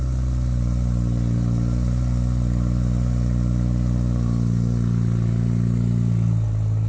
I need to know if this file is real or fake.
real